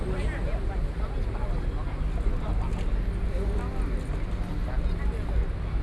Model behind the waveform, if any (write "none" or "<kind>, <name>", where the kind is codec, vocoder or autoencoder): none